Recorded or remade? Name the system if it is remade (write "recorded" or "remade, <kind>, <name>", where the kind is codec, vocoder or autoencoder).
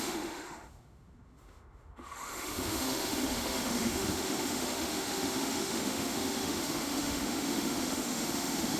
remade, autoencoder, DAC-VAE